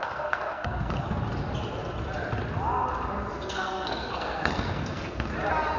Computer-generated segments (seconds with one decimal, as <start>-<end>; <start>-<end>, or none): 0.0-1.2; 3.3-5.3